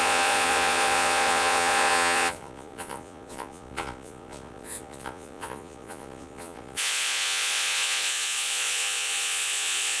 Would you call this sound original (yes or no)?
no